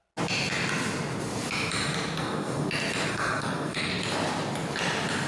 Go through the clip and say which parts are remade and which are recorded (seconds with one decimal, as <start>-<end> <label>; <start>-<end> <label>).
0.0-2.2 recorded; 2.2-2.7 remade; 2.7-3.1 recorded; 3.1-3.9 remade; 3.9-5.3 recorded